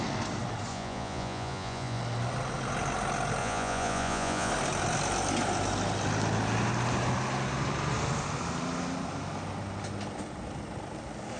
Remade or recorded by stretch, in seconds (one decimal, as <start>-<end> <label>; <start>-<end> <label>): 0.0-0.7 recorded; 0.7-2.0 remade; 2.0-3.4 recorded; 3.4-4.5 remade; 4.5-11.4 recorded